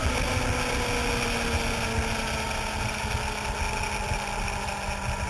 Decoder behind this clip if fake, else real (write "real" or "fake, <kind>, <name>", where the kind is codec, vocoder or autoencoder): real